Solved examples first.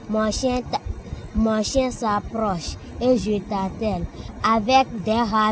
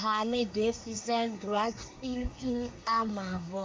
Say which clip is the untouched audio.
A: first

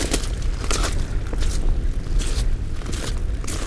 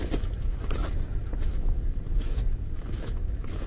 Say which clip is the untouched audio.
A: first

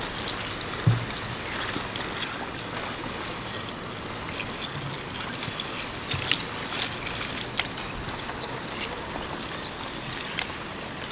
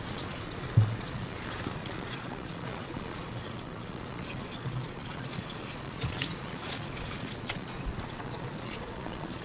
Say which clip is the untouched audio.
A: first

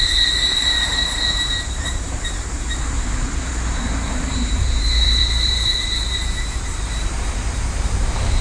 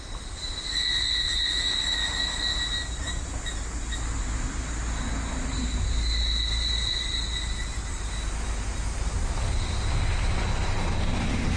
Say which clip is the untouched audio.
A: second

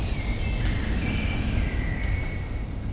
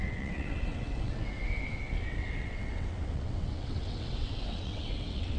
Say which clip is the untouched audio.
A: first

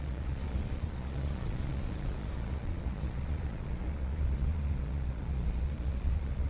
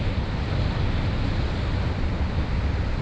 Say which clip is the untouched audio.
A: second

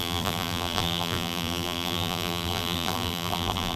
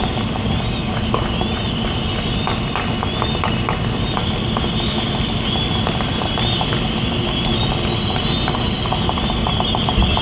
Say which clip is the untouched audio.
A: second